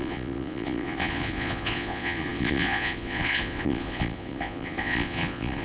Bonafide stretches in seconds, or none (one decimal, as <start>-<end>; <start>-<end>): none